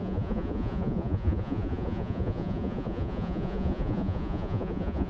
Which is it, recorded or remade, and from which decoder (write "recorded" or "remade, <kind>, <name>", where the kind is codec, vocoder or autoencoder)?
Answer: remade, vocoder, Vocos